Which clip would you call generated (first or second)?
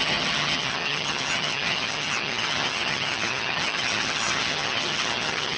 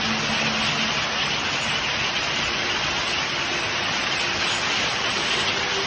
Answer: first